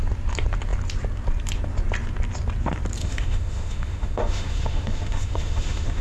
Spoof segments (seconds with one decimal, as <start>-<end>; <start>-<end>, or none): 3.0-6.0

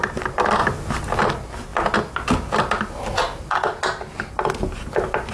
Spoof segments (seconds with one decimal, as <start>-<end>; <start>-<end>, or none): none